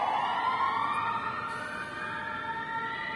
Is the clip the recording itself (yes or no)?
yes